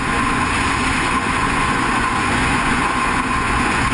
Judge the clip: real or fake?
fake